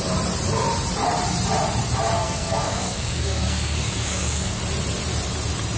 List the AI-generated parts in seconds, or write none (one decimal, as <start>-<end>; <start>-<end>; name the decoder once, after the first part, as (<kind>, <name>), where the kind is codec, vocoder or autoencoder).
2.2-4.6 (codec, SNAC)